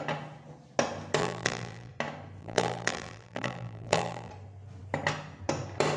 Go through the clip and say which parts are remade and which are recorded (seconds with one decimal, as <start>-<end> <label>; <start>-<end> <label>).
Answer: 0.0-1.2 recorded; 1.2-1.9 remade; 1.9-2.4 recorded; 2.4-4.3 remade; 4.3-6.0 recorded